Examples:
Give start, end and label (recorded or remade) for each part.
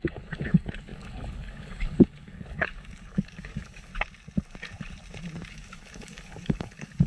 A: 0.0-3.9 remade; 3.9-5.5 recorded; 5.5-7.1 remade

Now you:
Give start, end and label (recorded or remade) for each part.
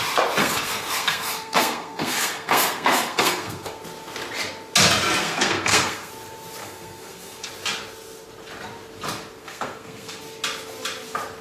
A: 0.0-0.4 recorded; 0.4-3.8 remade; 3.8-5.2 recorded; 5.2-6.1 remade; 6.1-6.6 recorded; 6.6-7.5 remade; 7.5-9.4 recorded; 9.4-10.2 remade; 10.2-11.4 recorded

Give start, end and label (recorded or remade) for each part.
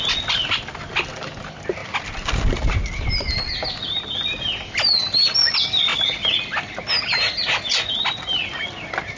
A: 0.0-9.2 recorded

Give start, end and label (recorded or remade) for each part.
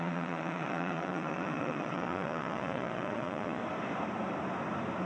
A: 0.0-3.6 remade; 3.6-5.1 recorded